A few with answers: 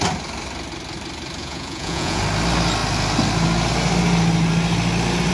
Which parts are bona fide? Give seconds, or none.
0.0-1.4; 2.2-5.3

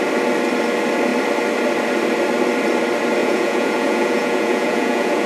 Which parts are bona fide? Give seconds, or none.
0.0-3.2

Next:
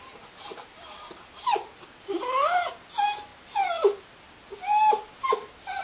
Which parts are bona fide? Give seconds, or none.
0.0-5.8

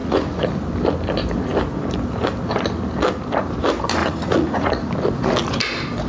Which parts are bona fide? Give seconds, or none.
0.5-4.0; 4.9-6.1

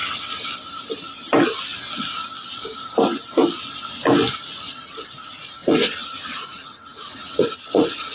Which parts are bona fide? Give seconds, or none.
0.0-4.9

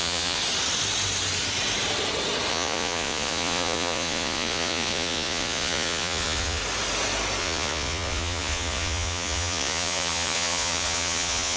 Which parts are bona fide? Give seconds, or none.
0.4-2.5; 6.6-7.4